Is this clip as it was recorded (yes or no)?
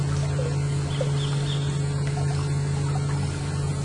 yes